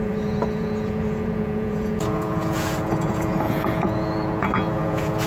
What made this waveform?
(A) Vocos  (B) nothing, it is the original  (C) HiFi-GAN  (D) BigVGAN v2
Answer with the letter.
A